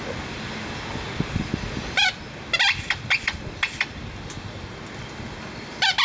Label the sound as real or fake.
real